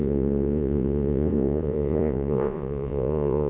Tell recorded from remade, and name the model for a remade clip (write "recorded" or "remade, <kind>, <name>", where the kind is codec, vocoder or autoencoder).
remade, vocoder, Vocos